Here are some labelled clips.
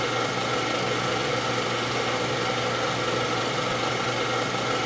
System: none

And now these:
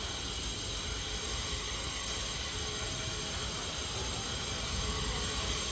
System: none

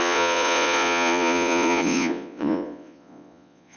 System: vocoder, Vocos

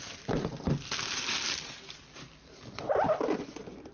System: none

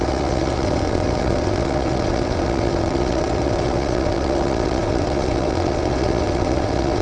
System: vocoder, WaveNeXt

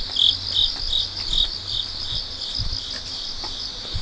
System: none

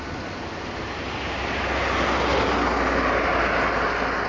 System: none